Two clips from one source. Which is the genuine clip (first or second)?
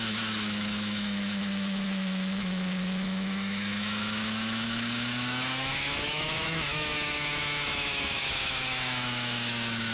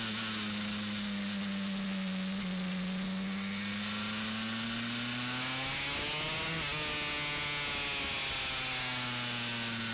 second